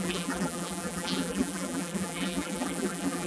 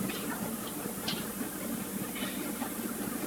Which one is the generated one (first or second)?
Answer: first